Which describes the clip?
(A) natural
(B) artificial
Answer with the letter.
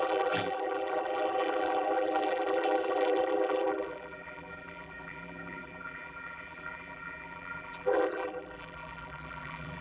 B